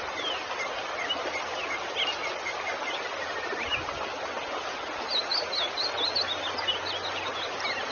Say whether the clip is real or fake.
real